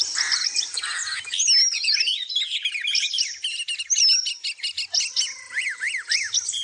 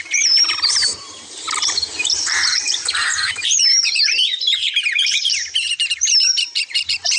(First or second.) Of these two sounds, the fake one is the second